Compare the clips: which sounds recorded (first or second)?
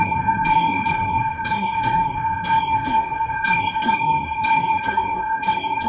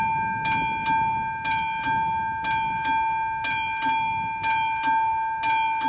second